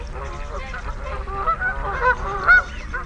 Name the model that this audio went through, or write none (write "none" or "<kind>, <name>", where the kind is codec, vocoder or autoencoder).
none